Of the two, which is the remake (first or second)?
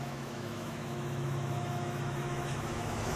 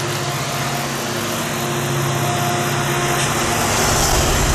first